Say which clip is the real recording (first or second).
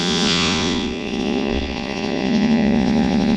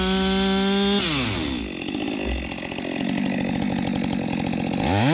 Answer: second